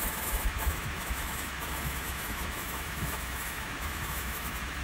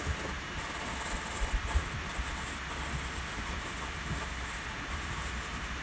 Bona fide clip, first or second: second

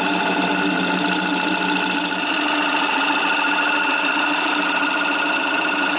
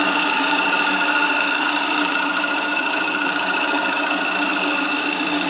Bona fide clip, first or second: first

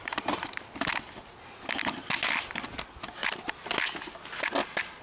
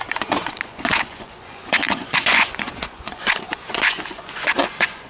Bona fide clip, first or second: first